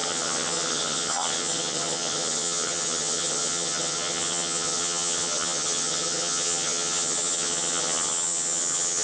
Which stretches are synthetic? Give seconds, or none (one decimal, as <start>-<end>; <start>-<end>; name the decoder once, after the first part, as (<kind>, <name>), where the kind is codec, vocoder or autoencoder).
0.0-9.0 (vocoder, HiFi-GAN)